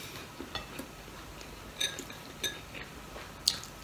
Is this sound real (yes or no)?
yes